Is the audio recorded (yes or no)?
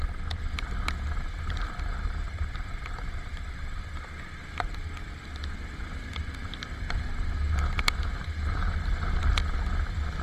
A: yes